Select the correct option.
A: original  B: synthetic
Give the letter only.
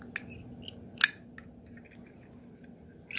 A